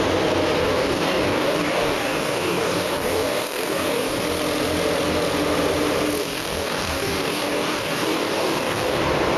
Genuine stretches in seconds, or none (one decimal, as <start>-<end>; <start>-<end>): 0.0-0.6; 4.2-6.2; 9.0-9.4